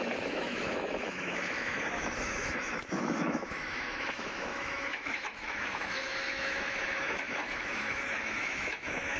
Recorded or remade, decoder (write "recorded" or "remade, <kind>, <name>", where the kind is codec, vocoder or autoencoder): remade, autoencoder, DAC-VAE